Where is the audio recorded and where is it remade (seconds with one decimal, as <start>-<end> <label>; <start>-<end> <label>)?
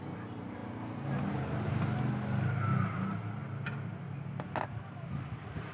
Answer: 0.0-5.7 recorded